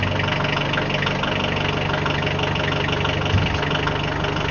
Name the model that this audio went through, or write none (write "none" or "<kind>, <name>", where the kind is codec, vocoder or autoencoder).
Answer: none